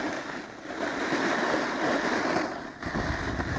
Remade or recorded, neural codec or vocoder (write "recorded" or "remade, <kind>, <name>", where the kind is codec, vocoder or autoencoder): recorded